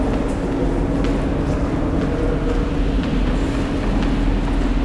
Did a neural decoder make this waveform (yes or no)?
no